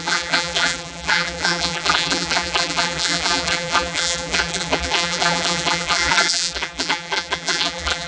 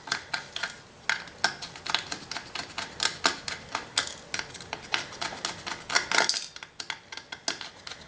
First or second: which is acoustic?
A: second